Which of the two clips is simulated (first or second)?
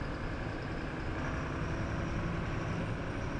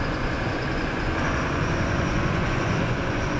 second